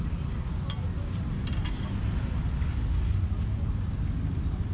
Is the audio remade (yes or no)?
no